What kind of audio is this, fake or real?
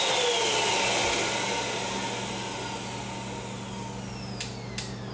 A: real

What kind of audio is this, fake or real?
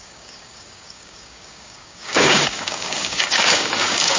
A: fake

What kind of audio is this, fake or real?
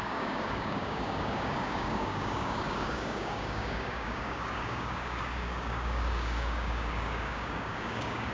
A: fake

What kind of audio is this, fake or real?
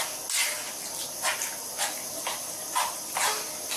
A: real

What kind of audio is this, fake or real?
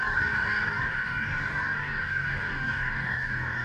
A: fake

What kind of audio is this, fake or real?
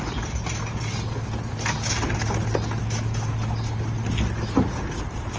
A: real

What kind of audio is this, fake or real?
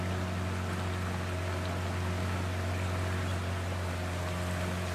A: real